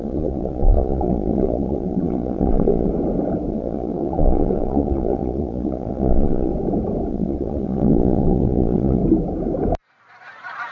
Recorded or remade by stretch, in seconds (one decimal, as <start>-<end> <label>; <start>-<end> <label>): 0.0-2.9 remade; 2.9-3.5 recorded; 3.5-6.5 remade; 6.5-7.1 recorded; 7.1-9.0 remade; 9.0-10.2 recorded; 10.2-10.7 remade